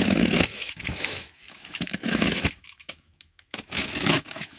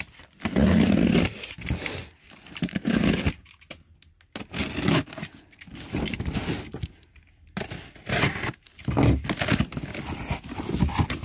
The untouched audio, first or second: second